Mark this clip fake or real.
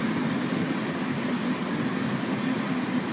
real